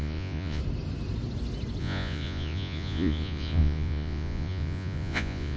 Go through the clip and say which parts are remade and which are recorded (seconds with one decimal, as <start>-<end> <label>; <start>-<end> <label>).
0.0-0.6 remade; 0.6-1.8 recorded; 1.8-5.6 remade

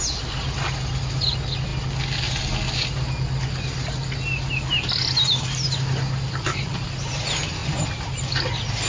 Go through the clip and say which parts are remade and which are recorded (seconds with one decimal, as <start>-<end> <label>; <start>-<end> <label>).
0.0-8.9 recorded

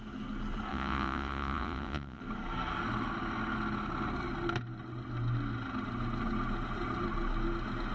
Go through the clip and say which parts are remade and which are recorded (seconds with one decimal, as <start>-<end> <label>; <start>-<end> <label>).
0.0-0.7 recorded; 0.7-2.2 remade; 2.2-7.9 recorded

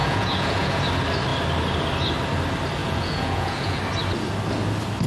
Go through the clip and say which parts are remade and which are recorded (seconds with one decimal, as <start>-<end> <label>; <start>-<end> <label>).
0.0-0.8 remade; 0.8-2.8 recorded; 2.8-3.8 remade; 3.8-5.1 recorded

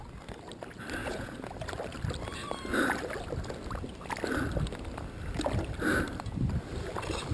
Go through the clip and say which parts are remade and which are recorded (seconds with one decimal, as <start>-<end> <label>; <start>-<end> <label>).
0.0-1.0 recorded; 1.0-1.5 remade; 1.5-7.3 recorded

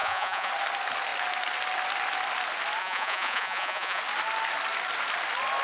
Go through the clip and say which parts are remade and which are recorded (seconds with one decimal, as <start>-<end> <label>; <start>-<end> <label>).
0.0-0.5 remade; 0.5-2.8 recorded; 2.8-4.0 remade; 4.0-5.6 recorded

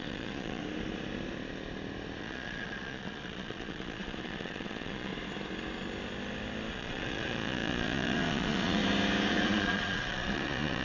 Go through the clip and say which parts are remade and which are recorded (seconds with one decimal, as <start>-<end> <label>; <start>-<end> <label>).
0.0-0.6 remade; 0.6-2.2 recorded; 2.2-5.1 remade; 5.1-6.7 recorded; 6.7-8.8 remade; 8.8-9.3 recorded; 9.3-10.8 remade